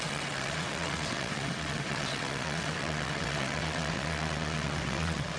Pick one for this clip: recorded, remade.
remade